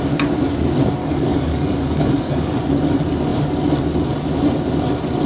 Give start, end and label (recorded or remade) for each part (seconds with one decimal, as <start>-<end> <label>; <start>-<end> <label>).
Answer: 0.0-1.0 recorded; 1.0-2.6 remade; 2.6-5.3 recorded